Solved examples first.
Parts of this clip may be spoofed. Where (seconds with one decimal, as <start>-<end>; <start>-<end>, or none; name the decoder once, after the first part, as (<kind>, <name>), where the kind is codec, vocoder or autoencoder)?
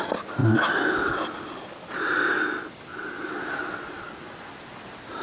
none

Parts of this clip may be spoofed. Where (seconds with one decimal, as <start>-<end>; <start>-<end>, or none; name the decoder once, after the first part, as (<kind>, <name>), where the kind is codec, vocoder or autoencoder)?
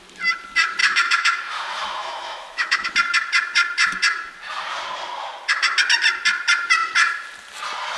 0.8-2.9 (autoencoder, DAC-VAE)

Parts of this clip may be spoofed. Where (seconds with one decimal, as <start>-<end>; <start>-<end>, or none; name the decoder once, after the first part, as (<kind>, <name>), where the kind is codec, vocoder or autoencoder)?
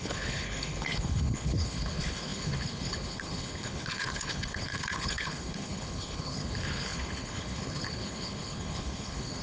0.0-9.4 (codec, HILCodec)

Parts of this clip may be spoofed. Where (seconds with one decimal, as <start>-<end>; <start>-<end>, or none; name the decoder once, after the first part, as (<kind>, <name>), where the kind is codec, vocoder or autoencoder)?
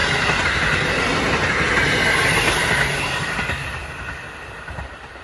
3.1-3.8 (vocoder, BigVGAN v2); 4.5-5.2